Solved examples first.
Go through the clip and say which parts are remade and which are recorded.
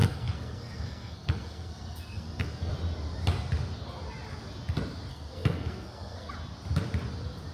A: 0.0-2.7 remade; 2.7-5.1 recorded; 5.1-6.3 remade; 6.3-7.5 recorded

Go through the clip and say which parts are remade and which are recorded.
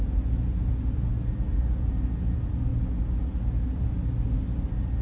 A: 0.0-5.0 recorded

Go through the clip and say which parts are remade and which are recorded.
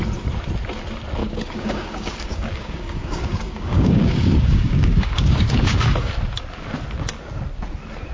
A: 0.0-1.2 recorded; 1.2-6.1 remade; 6.1-8.1 recorded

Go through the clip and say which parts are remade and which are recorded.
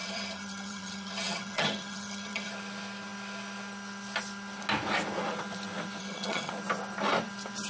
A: 0.0-2.5 remade; 2.5-6.0 recorded; 6.0-6.5 remade; 6.5-7.7 recorded